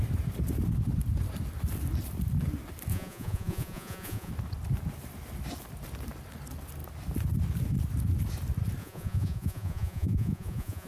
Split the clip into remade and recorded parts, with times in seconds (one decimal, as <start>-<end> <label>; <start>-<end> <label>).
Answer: 0.0-2.9 recorded; 2.9-4.3 remade; 4.3-8.8 recorded; 8.8-10.9 remade